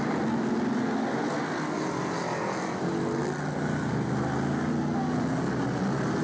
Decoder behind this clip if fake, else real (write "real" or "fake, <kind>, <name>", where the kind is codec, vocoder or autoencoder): real